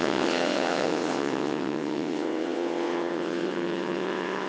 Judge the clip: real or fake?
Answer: fake